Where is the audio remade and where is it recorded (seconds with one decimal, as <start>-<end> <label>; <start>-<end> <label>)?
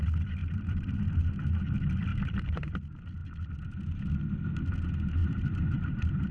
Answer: 0.0-0.4 recorded; 0.4-1.0 remade; 1.0-2.1 recorded; 2.1-2.7 remade; 2.7-5.2 recorded; 5.2-6.3 remade